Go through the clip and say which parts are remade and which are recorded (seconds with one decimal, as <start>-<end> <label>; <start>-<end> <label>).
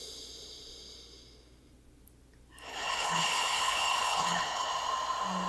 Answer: 0.0-2.7 recorded; 2.7-4.7 remade; 4.7-5.5 recorded